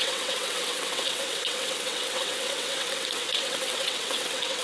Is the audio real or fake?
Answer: fake